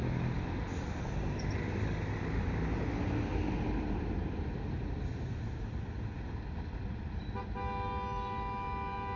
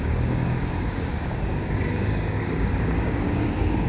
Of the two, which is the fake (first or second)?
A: second